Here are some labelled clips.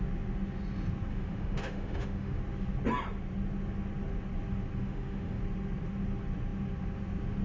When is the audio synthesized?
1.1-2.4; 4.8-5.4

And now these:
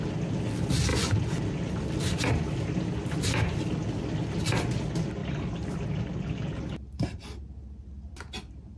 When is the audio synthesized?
none

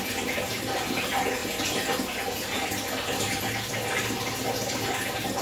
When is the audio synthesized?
none

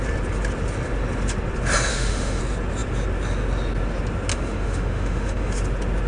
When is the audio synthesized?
1.9-2.4; 4.3-5.5

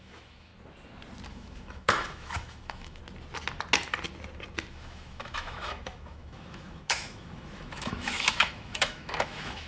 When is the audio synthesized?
0.0-0.5; 1.3-3.0; 4.7-9.7

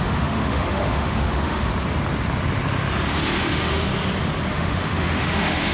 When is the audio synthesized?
0.0-1.7; 3.1-3.9; 4.5-5.7

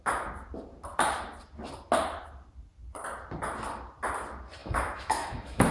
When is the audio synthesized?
4.6-5.7

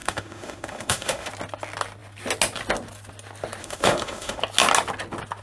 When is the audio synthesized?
0.0-1.3; 3.6-4.4